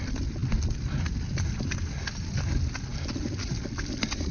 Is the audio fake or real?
real